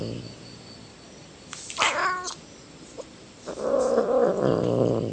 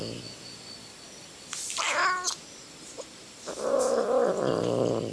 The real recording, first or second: second